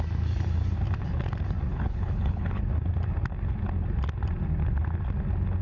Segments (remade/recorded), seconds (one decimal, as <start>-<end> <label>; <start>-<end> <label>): 0.0-1.7 recorded; 1.7-2.6 remade; 2.6-5.6 recorded